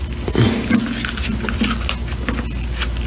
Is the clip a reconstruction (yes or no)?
no